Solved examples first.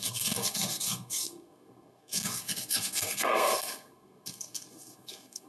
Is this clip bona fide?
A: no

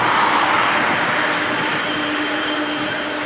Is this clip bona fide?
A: yes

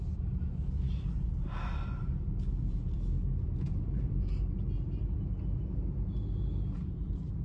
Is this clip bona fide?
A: yes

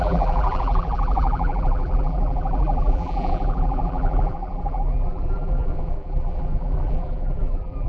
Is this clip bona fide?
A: no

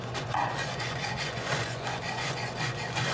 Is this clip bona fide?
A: no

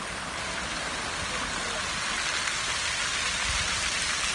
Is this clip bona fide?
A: yes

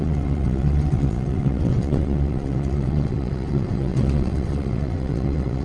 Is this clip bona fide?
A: no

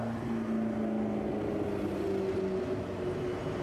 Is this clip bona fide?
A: yes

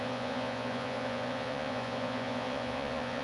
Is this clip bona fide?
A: no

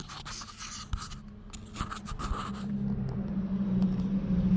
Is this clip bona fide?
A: yes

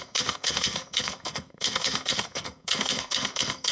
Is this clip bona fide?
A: no